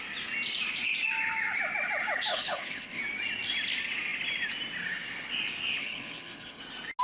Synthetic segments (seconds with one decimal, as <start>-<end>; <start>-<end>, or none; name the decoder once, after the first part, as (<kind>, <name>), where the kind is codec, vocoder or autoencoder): 2.3-3.0 (codec, HILCodec); 5.8-6.6